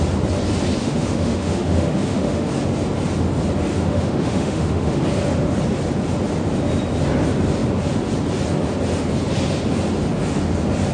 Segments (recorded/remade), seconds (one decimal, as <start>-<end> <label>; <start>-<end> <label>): 0.0-0.8 recorded; 0.8-2.5 remade; 2.5-3.7 recorded; 3.7-5.0 remade; 5.0-10.9 recorded